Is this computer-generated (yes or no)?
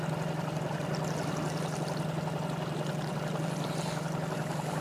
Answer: no